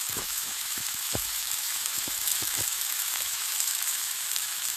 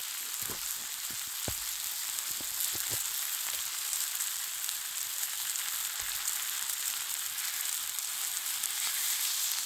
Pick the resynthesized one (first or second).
first